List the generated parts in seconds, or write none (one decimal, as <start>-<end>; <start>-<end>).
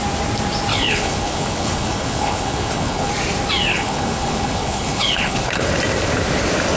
0.7-3.1; 3.7-5.7